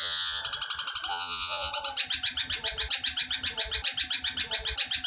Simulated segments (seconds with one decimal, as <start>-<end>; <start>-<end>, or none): 0.0-0.4; 1.1-1.7